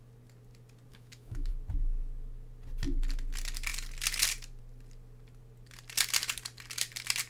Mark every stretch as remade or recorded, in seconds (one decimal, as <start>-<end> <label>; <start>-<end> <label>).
0.0-0.9 recorded; 0.9-1.5 remade; 1.5-7.3 recorded